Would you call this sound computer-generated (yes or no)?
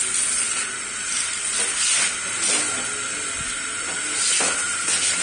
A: no